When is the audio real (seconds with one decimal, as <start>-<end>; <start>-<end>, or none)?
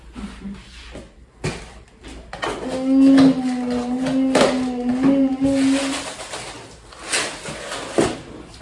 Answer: 0.0-8.6